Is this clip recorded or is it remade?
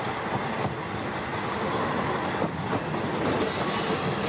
recorded